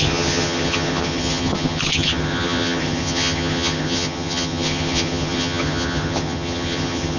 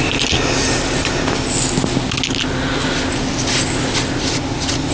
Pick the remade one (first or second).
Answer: first